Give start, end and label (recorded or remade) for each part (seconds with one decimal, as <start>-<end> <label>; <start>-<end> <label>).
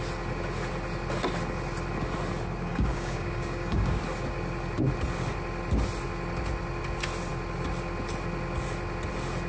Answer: 0.0-2.7 recorded; 2.7-4.0 remade; 4.0-9.5 recorded